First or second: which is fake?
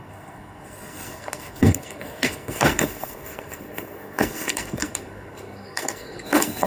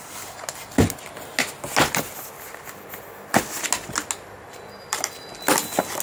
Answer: first